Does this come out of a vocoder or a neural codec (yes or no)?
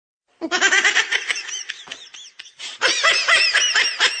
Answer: yes